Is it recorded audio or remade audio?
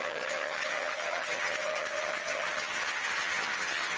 remade